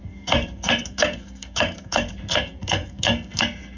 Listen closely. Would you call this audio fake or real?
fake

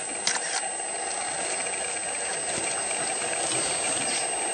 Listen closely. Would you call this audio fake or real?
real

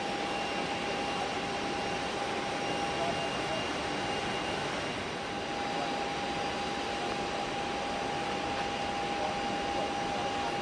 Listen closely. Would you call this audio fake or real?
real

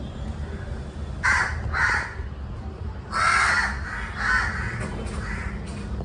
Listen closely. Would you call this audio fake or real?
real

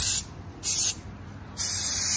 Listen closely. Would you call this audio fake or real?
real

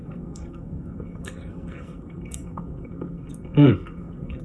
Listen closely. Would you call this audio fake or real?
fake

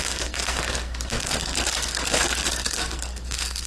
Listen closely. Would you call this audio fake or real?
fake